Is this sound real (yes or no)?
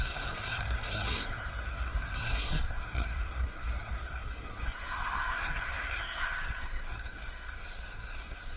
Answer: no